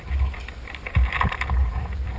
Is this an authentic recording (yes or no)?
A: yes